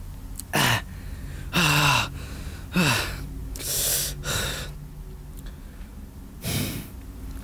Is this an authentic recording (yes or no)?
yes